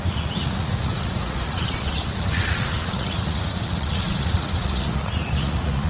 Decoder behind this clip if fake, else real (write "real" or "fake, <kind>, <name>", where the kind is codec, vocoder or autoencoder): fake, vocoder, Vocos